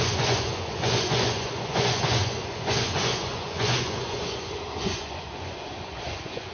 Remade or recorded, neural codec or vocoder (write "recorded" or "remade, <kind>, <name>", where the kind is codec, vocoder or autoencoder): remade, vocoder, Vocos